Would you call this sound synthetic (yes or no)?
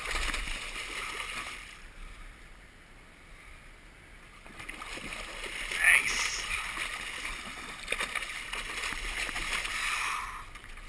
no